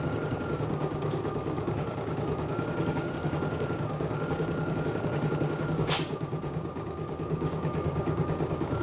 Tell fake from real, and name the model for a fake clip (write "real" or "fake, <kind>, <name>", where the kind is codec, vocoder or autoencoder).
fake, codec, DAC